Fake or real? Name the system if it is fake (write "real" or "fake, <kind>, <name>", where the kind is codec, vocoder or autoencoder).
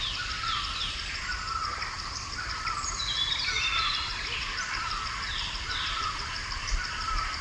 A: fake, vocoder, BigVGAN v2